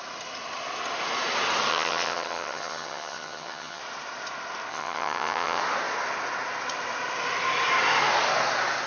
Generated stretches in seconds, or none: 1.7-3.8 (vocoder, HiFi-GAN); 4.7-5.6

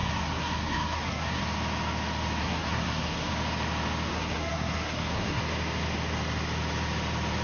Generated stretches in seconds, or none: 0.0-1.4 (codec, SNAC); 2.4-3.3; 4.1-5.4

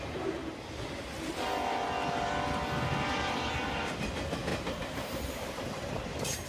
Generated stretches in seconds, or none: 0.0-0.4 (vocoder, BigVGAN v2); 3.1-6.5

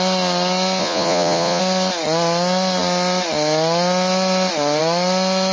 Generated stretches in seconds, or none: 0.8-1.6 (vocoder, Vocos)

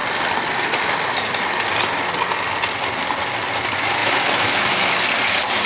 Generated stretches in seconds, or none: 4.0-4.9 (autoencoder, DAC-VAE)

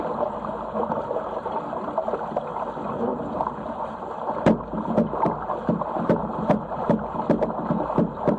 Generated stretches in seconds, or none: 3.1-4.0 (vocoder, BigVGAN v2); 6.2-6.8

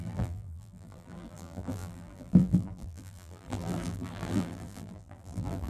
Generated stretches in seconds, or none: 0.0-5.7 (vocoder, BigVGAN v2)